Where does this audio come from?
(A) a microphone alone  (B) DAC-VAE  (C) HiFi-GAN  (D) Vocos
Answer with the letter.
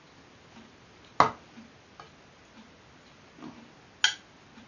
A